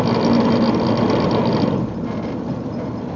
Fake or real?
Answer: real